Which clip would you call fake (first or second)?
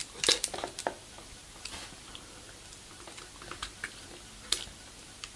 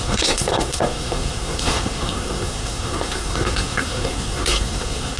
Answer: second